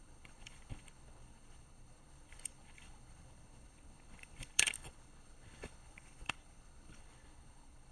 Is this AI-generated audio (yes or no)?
yes